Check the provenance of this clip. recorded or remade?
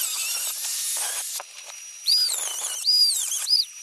remade